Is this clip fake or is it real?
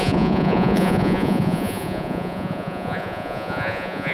fake